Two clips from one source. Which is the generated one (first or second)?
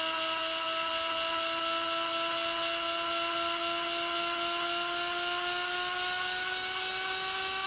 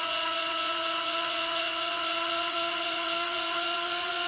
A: second